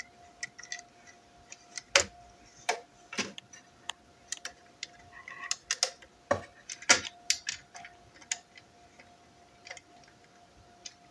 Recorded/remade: recorded